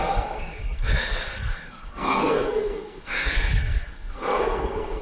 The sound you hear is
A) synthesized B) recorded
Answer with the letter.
A